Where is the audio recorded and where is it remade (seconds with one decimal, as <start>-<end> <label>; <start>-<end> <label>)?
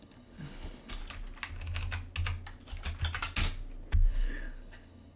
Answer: 0.0-1.0 remade; 1.0-4.1 recorded; 4.1-5.2 remade